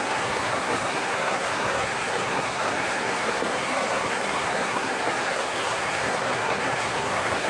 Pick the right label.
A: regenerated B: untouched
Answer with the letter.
A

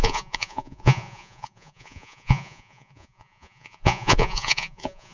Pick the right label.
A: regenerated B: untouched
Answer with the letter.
A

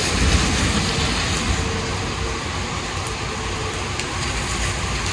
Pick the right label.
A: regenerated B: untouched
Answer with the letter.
B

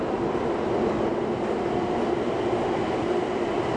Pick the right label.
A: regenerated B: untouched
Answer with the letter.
B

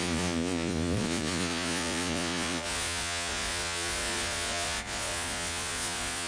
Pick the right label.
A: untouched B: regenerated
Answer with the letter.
B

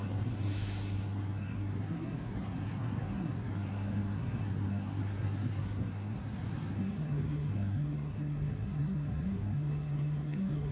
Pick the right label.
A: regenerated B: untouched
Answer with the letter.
A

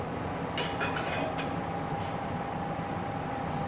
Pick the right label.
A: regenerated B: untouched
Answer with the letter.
B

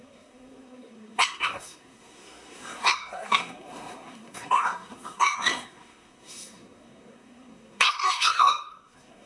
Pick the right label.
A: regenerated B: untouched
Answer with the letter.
A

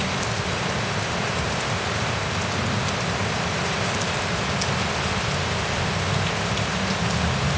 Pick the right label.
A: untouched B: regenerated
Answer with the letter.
A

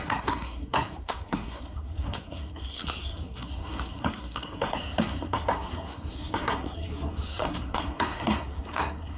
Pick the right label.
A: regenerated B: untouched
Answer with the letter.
A